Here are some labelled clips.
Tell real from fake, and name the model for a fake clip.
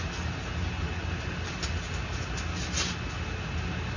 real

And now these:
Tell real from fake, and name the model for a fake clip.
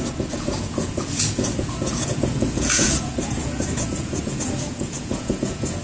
fake, vocoder, Vocos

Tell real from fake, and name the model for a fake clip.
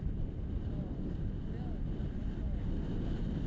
real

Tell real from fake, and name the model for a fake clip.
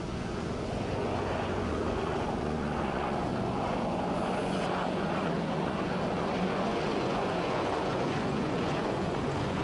fake, vocoder, Vocos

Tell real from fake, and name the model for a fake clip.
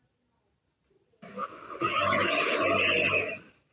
real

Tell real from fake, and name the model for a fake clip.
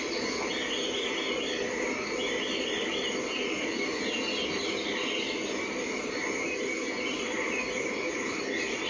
real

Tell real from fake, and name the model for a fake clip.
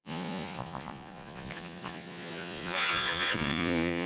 fake, vocoder, Vocos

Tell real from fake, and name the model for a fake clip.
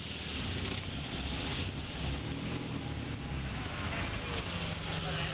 real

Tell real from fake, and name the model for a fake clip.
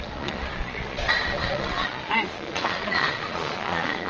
fake, vocoder, Vocos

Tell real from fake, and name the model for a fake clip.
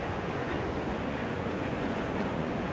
fake, vocoder, Vocos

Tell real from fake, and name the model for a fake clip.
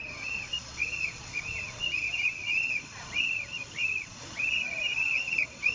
fake, vocoder, Vocos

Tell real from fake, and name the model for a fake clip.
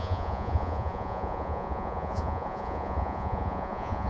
fake, vocoder, Vocos